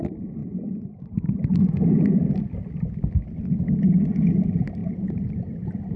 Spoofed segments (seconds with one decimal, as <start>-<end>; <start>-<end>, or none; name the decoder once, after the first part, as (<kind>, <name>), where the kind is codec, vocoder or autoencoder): 0.4-2.4 (vocoder, BigVGAN v2); 4.8-6.0